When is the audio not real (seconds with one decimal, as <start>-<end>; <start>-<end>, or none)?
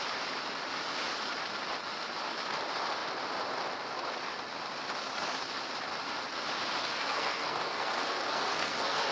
6.8-9.1